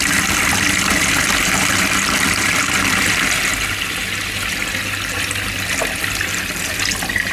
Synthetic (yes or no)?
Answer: yes